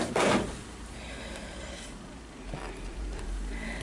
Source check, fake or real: fake